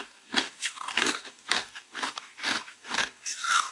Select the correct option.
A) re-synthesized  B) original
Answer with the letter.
A